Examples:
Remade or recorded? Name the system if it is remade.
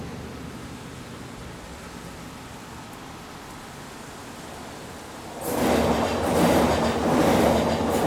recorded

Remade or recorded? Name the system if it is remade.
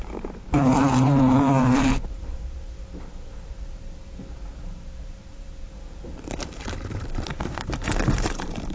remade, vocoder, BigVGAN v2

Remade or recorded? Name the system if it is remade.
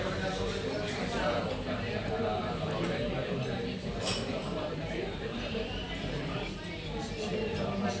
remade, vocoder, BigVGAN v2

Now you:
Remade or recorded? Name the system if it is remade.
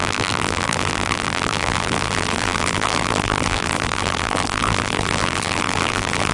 remade, vocoder, BigVGAN v2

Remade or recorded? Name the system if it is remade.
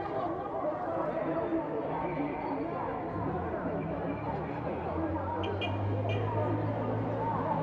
recorded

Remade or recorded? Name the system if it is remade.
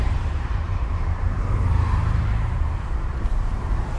remade, vocoder, BigVGAN v2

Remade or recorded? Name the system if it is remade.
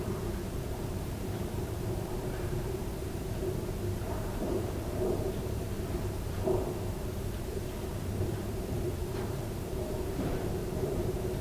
remade, vocoder, BigVGAN v2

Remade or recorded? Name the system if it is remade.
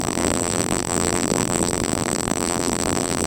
remade, vocoder, BigVGAN v2